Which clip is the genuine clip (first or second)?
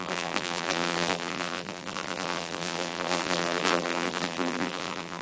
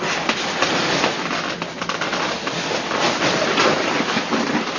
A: second